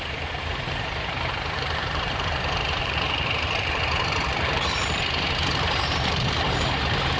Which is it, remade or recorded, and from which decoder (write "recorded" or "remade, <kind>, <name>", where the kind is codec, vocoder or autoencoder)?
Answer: remade, vocoder, BigVGAN v2